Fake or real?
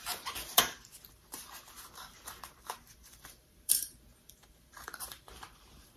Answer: fake